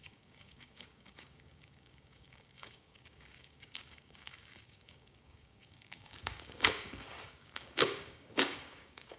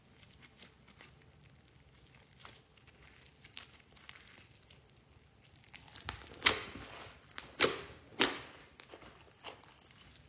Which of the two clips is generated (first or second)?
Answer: first